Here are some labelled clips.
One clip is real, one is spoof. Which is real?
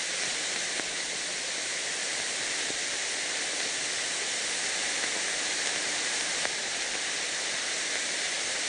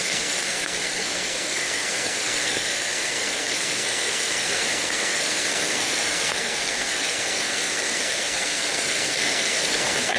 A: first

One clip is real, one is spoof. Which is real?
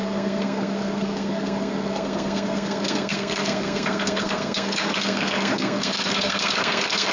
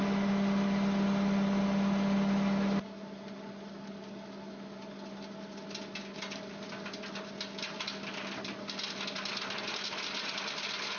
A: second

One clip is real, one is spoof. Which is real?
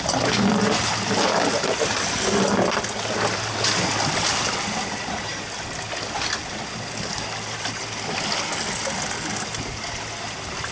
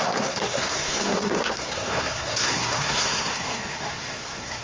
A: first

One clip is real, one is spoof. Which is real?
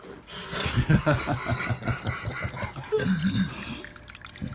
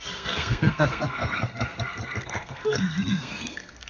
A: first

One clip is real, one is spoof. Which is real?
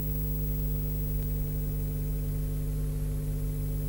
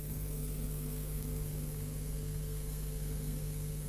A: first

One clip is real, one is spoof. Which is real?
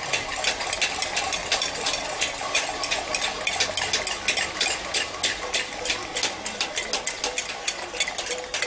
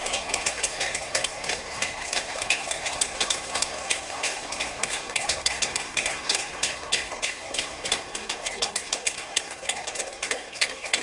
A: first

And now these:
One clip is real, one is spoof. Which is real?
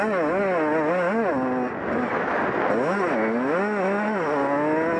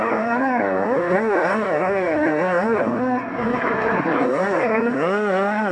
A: first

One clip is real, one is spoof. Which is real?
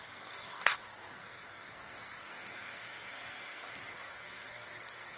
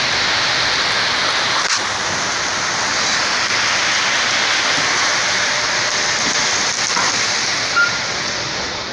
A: second